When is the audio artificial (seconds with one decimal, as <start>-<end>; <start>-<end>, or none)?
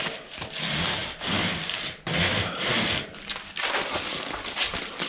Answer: none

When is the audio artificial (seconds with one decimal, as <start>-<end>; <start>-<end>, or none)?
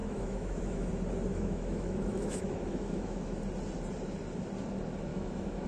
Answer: 0.0-0.9; 1.3-3.4; 5.1-5.7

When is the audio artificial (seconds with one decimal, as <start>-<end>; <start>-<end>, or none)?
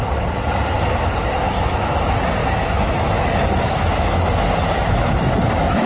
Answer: 1.2-2.0; 2.4-5.9